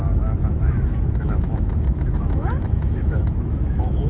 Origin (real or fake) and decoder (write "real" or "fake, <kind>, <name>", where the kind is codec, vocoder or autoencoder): fake, autoencoder, DAC-VAE